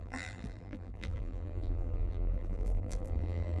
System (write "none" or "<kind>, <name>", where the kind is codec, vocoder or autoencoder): vocoder, BigVGAN v2